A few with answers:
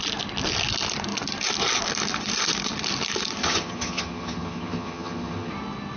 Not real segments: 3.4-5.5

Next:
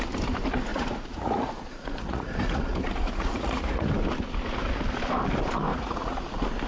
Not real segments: 0.7-3.9; 5.7-6.2

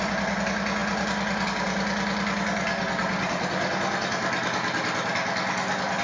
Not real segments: none